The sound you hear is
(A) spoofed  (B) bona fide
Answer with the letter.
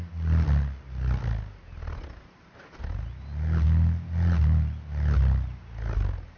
B